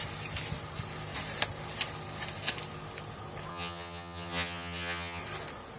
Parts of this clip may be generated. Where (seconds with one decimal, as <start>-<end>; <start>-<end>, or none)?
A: 3.5-5.2